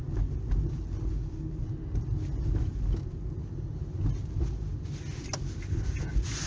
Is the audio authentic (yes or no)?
yes